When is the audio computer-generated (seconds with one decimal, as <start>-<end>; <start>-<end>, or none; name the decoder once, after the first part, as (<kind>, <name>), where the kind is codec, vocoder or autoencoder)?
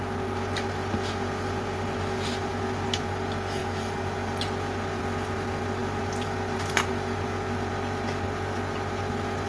none